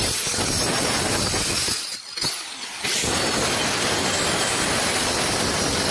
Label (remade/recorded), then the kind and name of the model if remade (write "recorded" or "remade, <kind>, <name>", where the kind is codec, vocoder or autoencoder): recorded